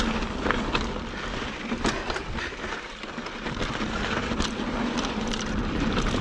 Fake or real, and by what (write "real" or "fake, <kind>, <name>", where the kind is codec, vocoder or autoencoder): real